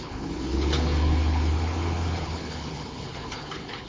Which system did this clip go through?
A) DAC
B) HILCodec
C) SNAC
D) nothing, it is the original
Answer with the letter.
B